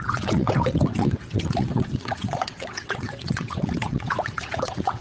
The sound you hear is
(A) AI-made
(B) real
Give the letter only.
A